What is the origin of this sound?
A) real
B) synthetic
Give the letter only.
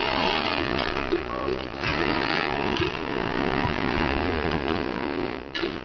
B